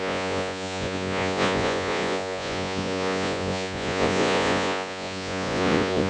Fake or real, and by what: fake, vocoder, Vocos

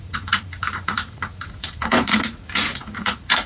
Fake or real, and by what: fake, vocoder, Vocos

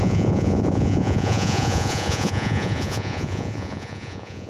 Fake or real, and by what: fake, vocoder, Vocos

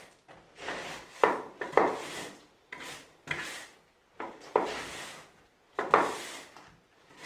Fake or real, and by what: real